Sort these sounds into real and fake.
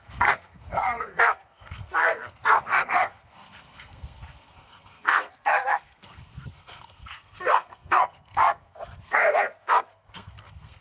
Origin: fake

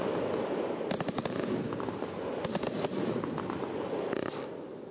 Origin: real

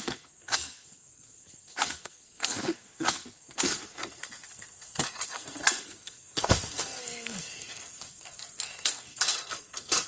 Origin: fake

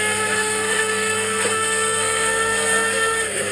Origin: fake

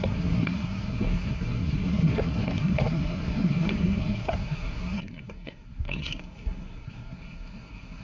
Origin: fake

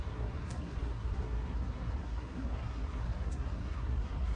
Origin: fake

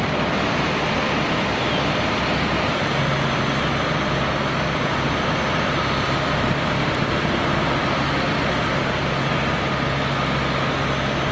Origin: real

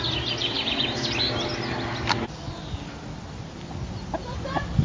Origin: real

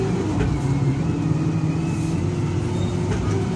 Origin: real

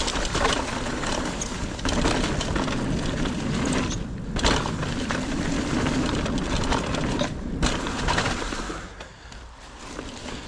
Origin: real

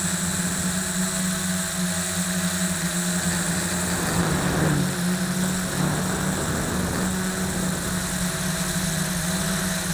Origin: real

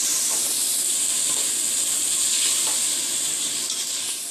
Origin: real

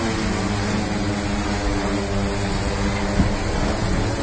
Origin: real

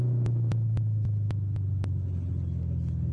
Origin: real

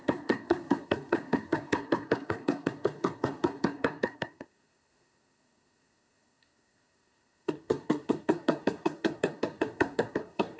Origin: fake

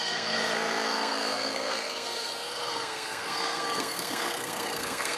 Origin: fake